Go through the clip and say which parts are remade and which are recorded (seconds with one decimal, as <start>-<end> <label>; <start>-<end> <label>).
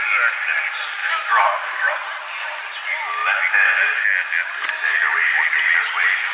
0.0-1.0 recorded; 1.0-1.9 remade; 1.9-6.3 recorded